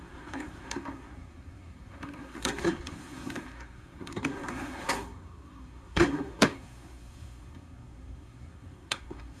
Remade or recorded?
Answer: remade